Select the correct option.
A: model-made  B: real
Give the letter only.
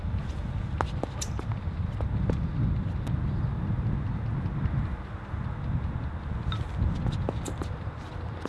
B